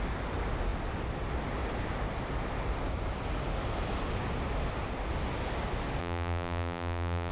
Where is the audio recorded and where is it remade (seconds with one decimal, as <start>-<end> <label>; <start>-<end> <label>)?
0.0-6.0 recorded; 6.0-7.3 remade